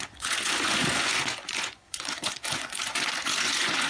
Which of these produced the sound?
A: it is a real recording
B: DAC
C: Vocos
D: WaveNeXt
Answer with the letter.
C